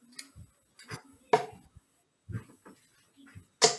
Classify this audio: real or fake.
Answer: real